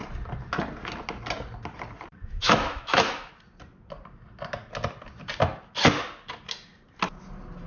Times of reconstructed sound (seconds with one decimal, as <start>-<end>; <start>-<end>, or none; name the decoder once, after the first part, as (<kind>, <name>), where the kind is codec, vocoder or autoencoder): 2.2-3.3 (autoencoder, DAC-VAE)